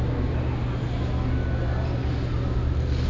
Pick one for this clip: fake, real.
real